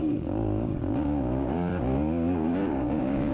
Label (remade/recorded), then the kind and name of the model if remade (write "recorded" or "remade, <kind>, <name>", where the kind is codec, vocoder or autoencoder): remade, codec, DAC